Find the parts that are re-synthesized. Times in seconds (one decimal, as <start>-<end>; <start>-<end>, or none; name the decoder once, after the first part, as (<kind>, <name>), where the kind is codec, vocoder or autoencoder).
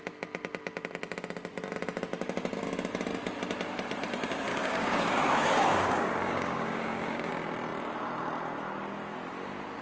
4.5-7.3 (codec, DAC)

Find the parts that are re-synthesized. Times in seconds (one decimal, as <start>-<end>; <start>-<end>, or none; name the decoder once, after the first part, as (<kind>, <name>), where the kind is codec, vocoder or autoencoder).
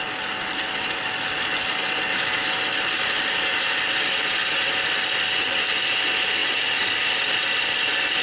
none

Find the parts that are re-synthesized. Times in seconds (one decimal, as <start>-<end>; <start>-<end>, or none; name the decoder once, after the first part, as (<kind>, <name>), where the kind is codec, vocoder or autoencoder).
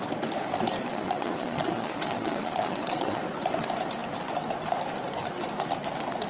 0.9-3.2 (vocoder, Vocos)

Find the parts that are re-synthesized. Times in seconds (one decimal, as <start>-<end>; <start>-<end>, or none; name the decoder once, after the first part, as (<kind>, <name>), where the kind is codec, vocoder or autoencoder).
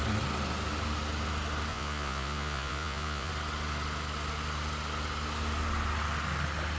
1.7-3.3 (vocoder, Vocos)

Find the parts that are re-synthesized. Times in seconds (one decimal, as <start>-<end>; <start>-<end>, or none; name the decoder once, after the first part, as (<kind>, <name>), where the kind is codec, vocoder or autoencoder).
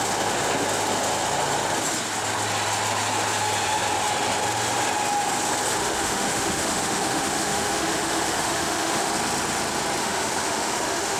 5.8-9.1 (autoencoder, DAC-VAE); 10.0-11.2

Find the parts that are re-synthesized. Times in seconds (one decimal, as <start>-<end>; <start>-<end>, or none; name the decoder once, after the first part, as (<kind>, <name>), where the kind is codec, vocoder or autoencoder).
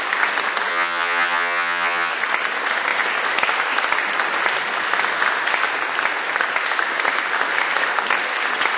0.7-2.1 (vocoder, HiFi-GAN)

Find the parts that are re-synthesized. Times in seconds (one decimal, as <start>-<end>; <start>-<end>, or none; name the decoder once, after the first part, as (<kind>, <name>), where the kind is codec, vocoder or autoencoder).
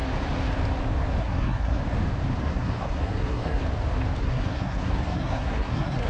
1.2-1.8 (codec, SNAC); 2.4-3.6; 4.2-6.1